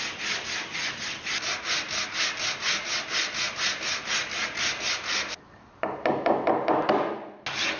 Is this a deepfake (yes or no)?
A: no